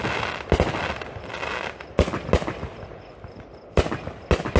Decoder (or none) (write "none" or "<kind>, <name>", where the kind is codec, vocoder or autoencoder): none